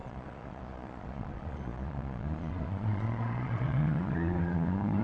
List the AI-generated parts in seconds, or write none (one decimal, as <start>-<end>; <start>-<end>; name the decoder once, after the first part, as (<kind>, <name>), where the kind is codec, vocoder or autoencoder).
0.0-5.0 (vocoder, Vocos)